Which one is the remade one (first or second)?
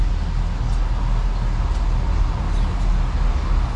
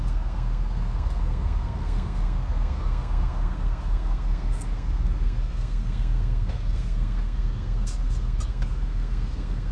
second